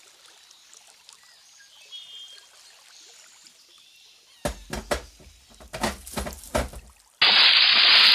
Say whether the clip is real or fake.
real